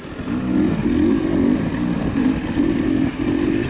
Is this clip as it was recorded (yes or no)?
yes